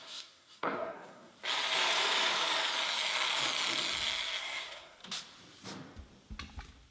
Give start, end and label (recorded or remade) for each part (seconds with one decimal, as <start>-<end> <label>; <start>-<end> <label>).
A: 0.0-1.3 remade; 1.3-4.4 recorded; 4.4-5.0 remade; 5.0-6.9 recorded